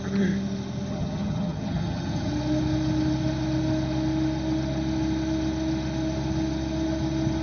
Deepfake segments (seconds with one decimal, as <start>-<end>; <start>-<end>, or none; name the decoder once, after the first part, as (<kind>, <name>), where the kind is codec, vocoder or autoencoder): 0.9-2.3 (vocoder, HiFi-GAN)